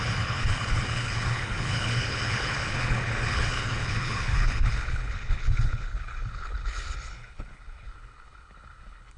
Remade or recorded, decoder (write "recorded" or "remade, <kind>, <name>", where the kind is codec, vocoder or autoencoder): remade, codec, HILCodec